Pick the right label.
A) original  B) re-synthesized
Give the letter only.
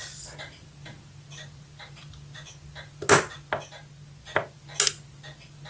A